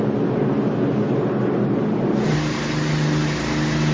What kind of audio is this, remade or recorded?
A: recorded